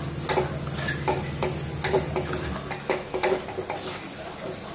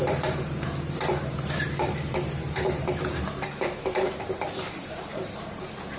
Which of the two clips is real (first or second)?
first